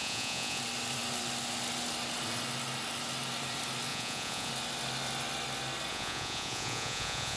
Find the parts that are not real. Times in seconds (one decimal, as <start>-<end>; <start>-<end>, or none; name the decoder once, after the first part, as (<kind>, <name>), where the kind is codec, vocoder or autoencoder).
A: 0.0-0.6 (vocoder, Vocos); 3.9-4.5; 5.9-7.4